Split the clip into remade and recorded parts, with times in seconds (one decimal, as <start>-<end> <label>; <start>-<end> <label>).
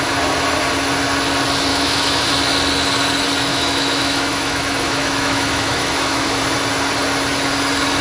0.0-1.7 recorded; 1.7-2.3 remade; 2.3-3.5 recorded; 3.5-6.4 remade; 6.4-8.0 recorded